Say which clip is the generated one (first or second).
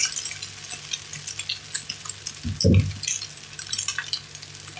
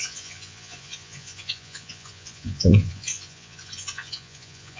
second